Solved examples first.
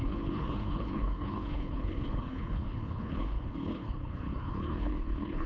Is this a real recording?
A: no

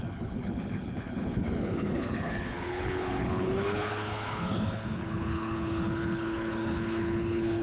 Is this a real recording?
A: no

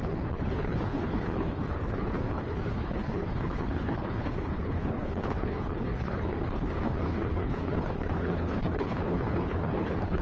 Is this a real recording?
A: no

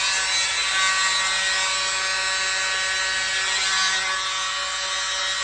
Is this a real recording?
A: yes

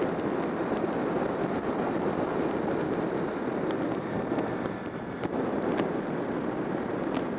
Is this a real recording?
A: yes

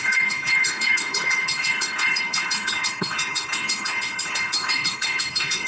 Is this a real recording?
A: no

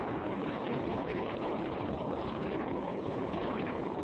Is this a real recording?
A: no